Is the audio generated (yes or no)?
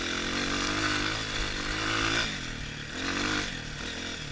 no